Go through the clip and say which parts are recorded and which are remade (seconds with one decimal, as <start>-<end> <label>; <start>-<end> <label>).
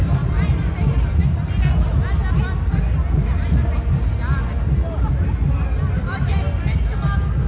0.0-7.5 recorded